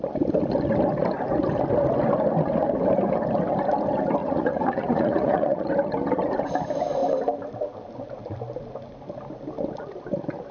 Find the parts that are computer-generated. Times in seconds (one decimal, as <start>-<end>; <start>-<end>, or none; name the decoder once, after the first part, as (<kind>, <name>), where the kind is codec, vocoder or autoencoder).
4.2-5.7 (vocoder, Vocos)